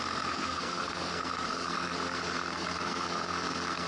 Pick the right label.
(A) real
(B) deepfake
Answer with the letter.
B